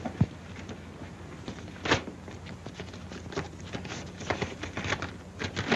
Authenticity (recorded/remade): recorded